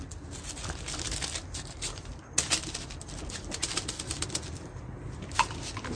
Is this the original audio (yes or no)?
yes